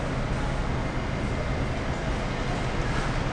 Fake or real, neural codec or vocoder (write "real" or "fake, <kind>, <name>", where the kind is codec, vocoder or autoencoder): real